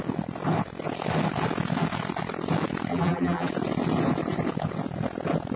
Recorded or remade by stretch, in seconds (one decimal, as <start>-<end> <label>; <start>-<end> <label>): 0.0-2.9 recorded; 2.9-3.5 remade; 3.5-5.6 recorded